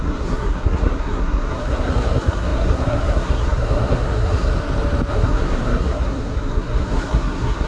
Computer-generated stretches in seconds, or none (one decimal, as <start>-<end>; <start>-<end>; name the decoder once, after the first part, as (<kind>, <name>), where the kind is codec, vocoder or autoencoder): 0.0-4.5 (codec, SNAC); 5.1-7.7